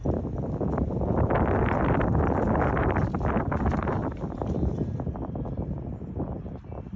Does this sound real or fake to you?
real